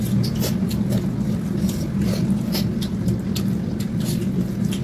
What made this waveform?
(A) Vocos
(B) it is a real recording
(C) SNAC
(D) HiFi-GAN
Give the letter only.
B